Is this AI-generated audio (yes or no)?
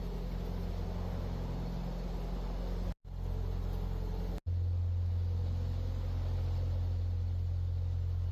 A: no